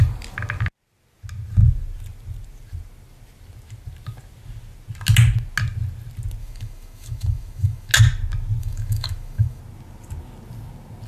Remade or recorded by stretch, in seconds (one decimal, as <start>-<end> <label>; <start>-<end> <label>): 0.0-6.4 recorded; 6.4-7.9 remade; 7.9-8.6 recorded; 8.6-9.6 remade; 9.6-11.1 recorded